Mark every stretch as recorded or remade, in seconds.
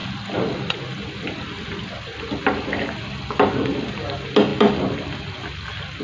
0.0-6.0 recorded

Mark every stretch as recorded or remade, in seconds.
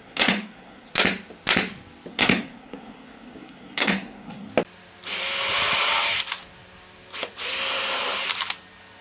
0.0-0.9 remade; 0.9-2.1 recorded; 2.1-4.5 remade; 4.5-9.0 recorded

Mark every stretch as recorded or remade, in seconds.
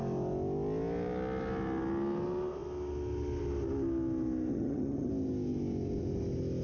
0.0-4.5 recorded; 4.5-5.1 remade; 5.1-6.6 recorded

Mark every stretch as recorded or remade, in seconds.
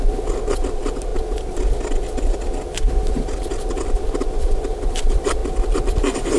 0.0-1.1 remade; 1.1-4.9 recorded; 4.9-6.4 remade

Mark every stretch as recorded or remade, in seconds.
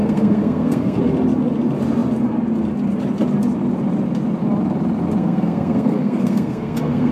0.0-1.0 remade; 1.0-5.2 recorded; 5.2-7.1 remade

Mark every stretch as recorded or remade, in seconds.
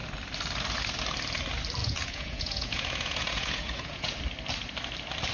0.0-1.8 recorded; 1.8-4.2 remade; 4.2-5.3 recorded